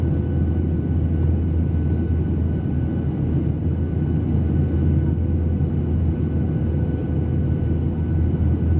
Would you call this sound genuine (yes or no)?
yes